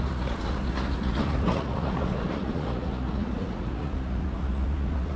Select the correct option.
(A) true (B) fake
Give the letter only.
B